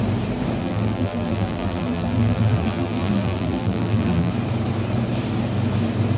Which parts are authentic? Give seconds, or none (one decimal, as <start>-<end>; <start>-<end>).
0.0-0.6; 4.3-6.2